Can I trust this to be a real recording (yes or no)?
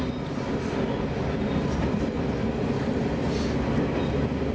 yes